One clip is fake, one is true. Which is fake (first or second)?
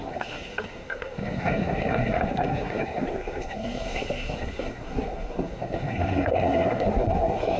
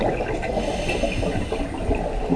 first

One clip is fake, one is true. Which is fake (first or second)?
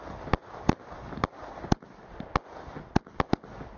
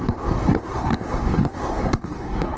second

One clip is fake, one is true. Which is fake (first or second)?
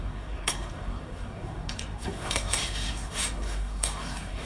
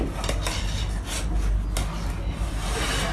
first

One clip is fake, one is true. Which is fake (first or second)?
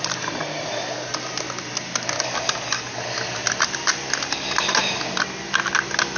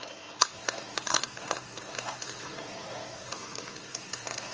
second